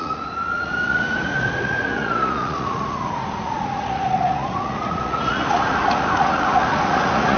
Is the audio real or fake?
fake